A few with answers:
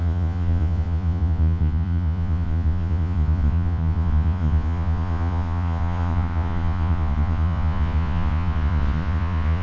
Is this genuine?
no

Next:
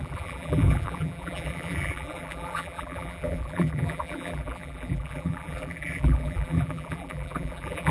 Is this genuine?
no